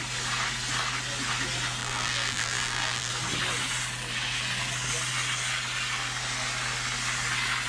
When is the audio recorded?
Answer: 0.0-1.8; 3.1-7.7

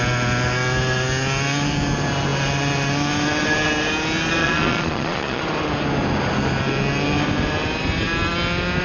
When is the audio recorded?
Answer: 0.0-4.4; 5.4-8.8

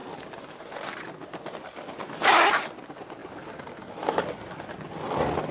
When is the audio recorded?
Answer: 0.0-5.5

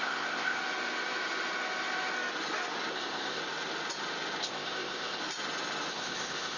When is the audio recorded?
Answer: 0.6-2.9; 3.4-4.4; 5.2-5.9

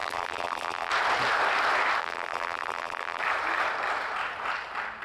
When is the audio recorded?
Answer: 0.9-2.0; 3.2-5.0

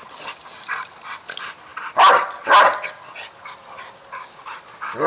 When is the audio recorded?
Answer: 0.0-5.1

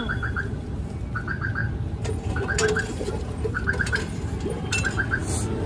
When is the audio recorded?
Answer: 0.0-5.7

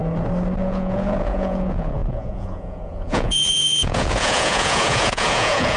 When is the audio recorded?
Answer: 0.0-0.6